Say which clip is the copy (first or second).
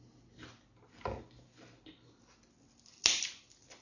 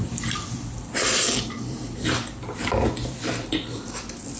second